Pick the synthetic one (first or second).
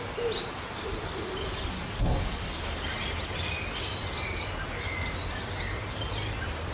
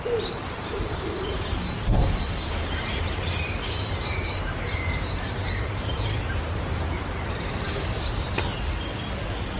second